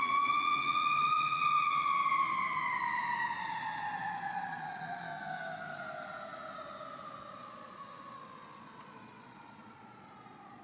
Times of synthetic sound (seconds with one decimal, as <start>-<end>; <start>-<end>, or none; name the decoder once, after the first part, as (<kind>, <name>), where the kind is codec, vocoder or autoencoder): 0.0-2.0 (vocoder, Vocos); 3.4-5.1; 7.3-10.6